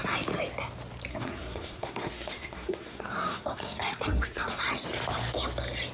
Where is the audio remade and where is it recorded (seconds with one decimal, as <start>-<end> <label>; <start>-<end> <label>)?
0.0-1.1 recorded; 1.1-4.6 remade; 4.6-5.9 recorded